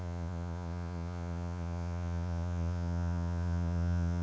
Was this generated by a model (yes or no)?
yes